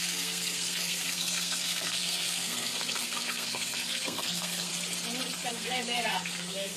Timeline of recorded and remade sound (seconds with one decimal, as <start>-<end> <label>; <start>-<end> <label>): 0.0-4.7 remade; 4.7-5.5 recorded; 5.5-6.8 remade